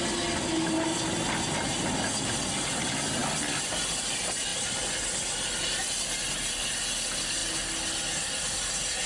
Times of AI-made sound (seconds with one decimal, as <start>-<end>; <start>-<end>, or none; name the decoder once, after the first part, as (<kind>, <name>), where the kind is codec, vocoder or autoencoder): none